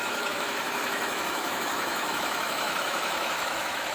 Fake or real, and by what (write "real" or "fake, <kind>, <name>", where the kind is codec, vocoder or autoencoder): fake, autoencoder, DAC-VAE